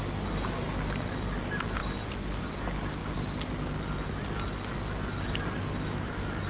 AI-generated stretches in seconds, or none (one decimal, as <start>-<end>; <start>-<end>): none